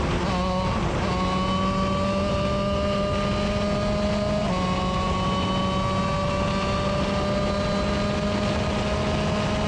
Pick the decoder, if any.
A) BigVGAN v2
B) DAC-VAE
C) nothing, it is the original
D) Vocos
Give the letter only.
C